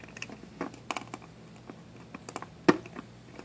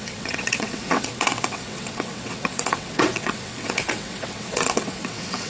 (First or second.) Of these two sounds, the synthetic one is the second